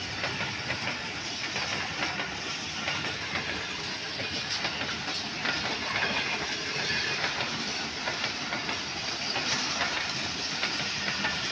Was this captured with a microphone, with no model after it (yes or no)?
yes